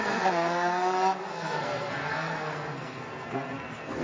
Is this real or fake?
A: fake